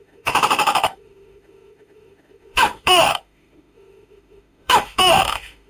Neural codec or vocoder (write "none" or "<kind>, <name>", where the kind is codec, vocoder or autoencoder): autoencoder, DAC-VAE